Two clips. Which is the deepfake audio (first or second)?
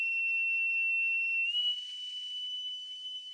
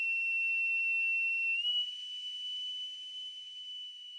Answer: first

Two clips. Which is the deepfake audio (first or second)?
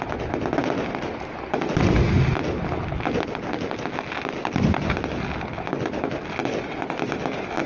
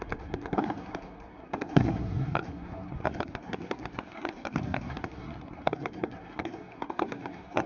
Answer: second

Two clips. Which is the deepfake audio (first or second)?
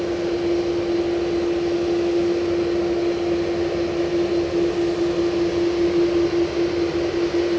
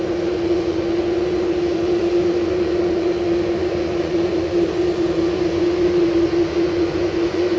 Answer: second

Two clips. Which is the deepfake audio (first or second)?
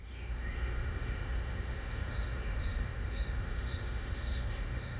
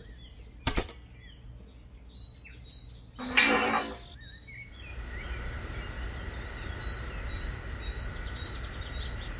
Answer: first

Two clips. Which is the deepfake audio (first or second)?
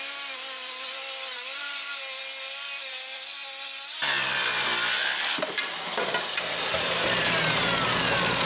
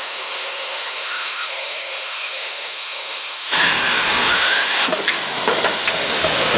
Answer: second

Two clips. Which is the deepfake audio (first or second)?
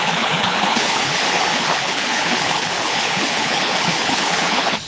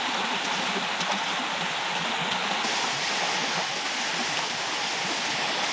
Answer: first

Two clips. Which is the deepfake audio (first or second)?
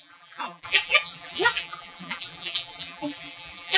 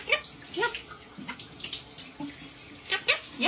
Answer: first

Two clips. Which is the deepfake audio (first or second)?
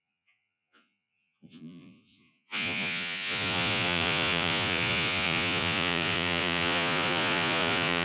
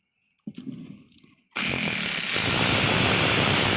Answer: first